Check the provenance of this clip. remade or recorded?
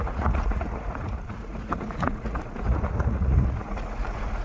remade